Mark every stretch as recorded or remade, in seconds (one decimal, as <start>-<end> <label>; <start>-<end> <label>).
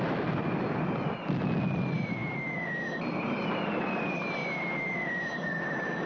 0.0-6.1 recorded